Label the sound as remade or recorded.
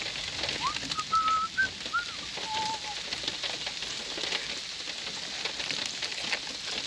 recorded